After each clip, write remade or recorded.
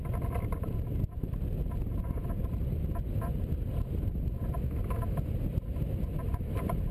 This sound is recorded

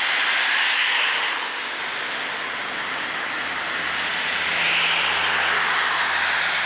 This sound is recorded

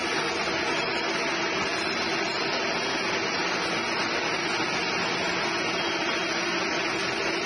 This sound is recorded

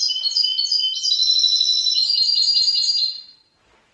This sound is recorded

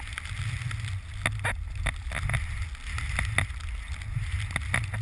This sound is recorded